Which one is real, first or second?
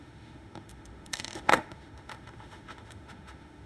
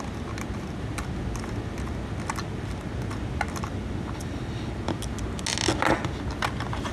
second